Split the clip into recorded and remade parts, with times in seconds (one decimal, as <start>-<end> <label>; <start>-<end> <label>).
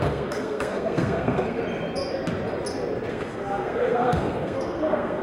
0.0-1.6 remade; 1.6-3.1 recorded; 3.1-5.2 remade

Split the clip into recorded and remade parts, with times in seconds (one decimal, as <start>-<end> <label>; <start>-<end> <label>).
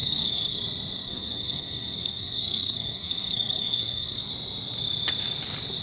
0.0-0.6 remade; 0.6-1.0 recorded; 1.0-4.3 remade; 4.3-5.8 recorded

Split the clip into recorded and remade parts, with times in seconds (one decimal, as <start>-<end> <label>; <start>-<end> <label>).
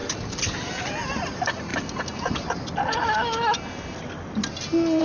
0.0-5.0 recorded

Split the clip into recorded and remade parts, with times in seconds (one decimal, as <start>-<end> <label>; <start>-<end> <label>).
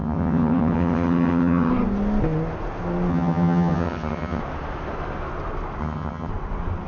0.0-1.7 remade; 1.7-3.1 recorded; 3.1-4.4 remade; 4.4-5.8 recorded; 5.8-6.3 remade; 6.3-6.9 recorded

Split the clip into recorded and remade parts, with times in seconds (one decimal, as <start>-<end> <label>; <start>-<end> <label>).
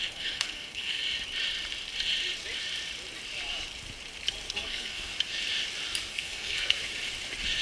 0.0-1.0 remade; 1.0-4.5 recorded; 4.5-5.1 remade; 5.1-6.1 recorded; 6.1-6.8 remade; 6.8-7.6 recorded